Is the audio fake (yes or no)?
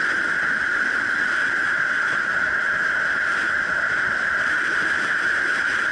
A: no